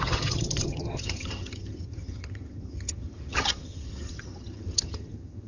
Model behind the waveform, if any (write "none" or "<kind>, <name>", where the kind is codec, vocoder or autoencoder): vocoder, HiFi-GAN